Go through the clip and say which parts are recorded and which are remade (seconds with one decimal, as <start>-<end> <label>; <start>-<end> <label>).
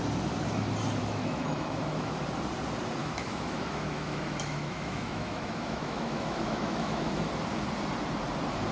0.0-1.0 recorded; 1.0-2.2 remade; 2.2-3.0 recorded; 3.0-7.3 remade; 7.3-8.7 recorded